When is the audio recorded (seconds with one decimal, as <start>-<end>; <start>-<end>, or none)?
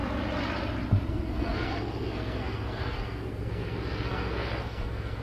0.0-1.1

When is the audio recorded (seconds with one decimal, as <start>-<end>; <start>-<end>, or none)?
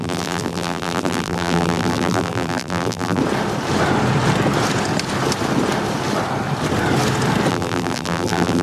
3.2-7.5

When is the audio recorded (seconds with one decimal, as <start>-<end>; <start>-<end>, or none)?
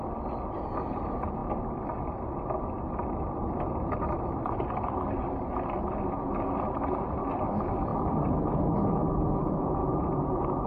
0.0-10.7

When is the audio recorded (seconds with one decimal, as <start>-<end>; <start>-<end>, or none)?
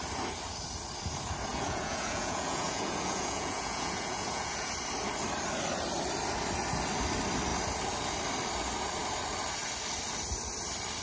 0.0-1.5; 4.7-11.0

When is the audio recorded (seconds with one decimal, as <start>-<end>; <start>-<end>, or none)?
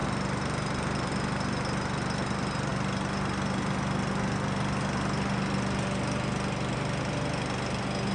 1.1-8.1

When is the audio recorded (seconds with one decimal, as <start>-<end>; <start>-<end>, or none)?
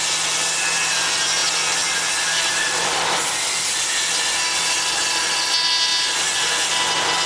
0.0-7.3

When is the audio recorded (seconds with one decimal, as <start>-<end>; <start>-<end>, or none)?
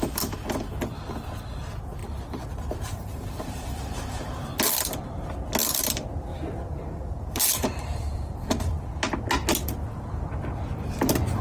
0.0-2.0; 4.3-6.3; 8.7-11.4